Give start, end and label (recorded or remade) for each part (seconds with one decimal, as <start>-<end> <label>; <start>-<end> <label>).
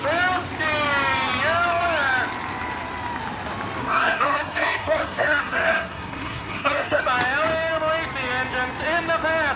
0.0-3.8 recorded; 3.8-7.0 remade; 7.0-9.6 recorded